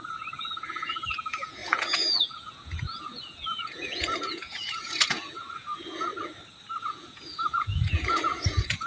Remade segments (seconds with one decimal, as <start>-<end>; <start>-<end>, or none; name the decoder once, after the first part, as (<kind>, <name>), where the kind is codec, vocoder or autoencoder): 0.0-6.1 (vocoder, Vocos); 6.8-8.9